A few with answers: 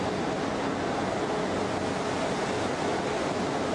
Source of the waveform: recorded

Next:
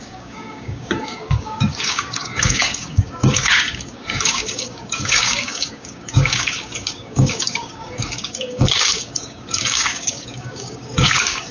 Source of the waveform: remade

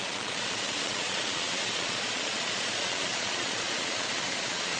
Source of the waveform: remade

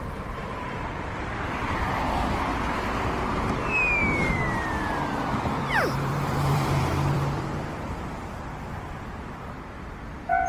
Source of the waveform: remade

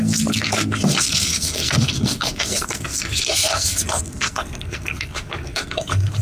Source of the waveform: remade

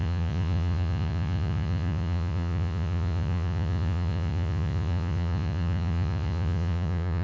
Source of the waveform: remade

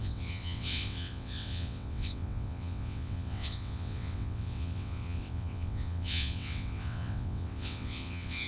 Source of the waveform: remade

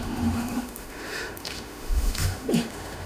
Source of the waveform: remade